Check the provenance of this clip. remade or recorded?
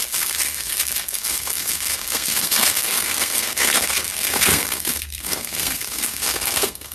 remade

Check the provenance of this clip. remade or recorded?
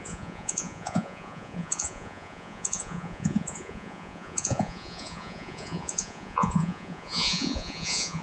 remade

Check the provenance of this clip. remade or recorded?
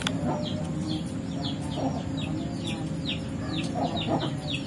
recorded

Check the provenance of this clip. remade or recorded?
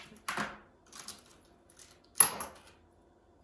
recorded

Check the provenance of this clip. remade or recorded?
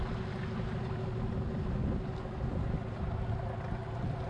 recorded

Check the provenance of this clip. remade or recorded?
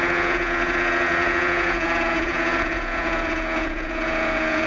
remade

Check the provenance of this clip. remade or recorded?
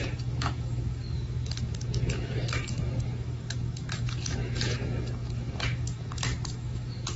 remade